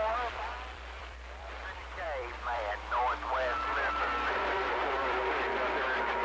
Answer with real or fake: fake